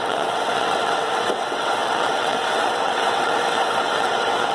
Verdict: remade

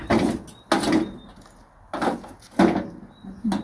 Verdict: recorded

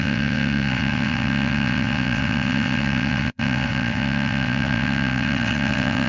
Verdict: remade